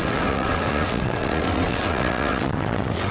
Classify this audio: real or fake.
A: fake